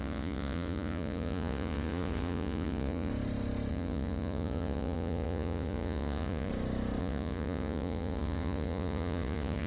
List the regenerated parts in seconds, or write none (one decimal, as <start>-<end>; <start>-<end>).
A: 0.0-3.1; 3.7-6.5; 7.0-9.7